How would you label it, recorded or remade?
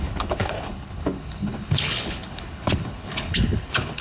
remade